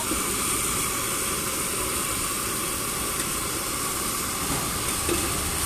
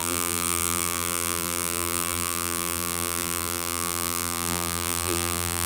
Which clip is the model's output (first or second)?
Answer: second